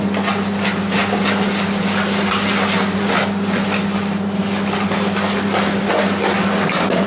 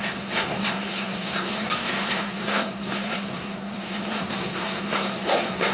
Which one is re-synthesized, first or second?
second